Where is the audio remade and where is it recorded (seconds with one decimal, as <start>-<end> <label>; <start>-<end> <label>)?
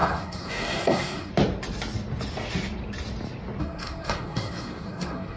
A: 0.0-1.3 remade; 1.3-3.6 recorded; 3.6-5.4 remade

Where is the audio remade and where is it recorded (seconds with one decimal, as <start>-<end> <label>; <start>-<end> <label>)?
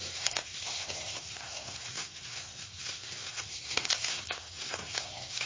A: 0.0-5.5 remade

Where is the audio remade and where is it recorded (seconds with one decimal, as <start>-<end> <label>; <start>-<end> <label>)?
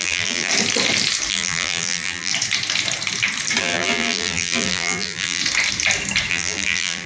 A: 0.0-0.5 remade; 0.5-1.3 recorded; 1.3-2.3 remade; 2.3-3.6 recorded; 3.6-5.4 remade; 5.4-6.3 recorded; 6.3-7.1 remade